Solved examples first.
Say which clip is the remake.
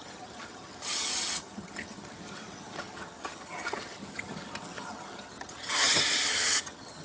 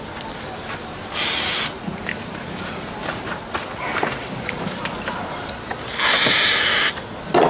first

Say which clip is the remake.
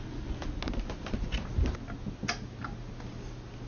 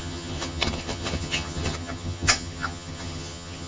second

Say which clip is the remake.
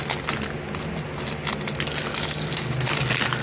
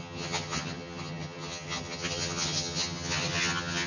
second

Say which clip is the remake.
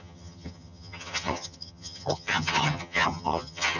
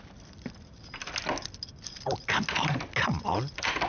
first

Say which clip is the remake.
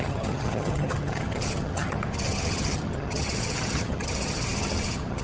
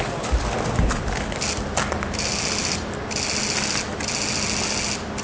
first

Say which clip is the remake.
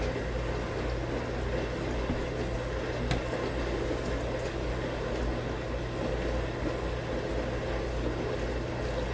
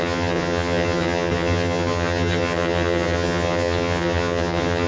second